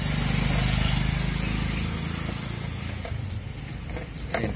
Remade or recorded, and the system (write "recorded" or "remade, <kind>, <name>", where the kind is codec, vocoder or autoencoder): recorded